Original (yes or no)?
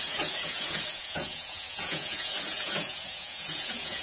no